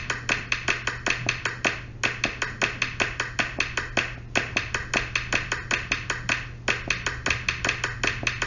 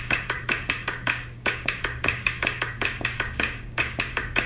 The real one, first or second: first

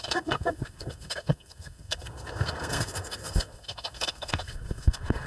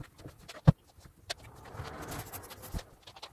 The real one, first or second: second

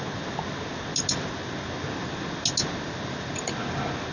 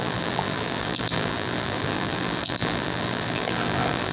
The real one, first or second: first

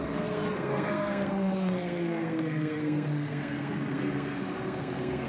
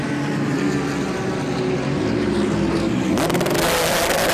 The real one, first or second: second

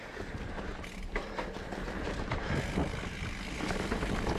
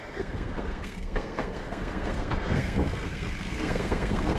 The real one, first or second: first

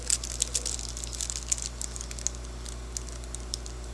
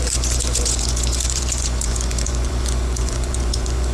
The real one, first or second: first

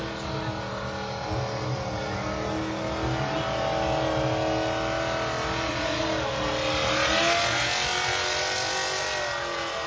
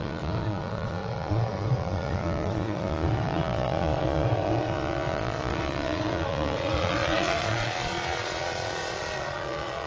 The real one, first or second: first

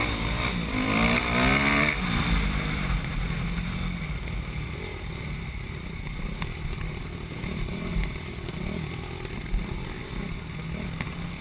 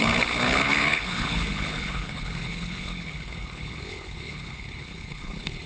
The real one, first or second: first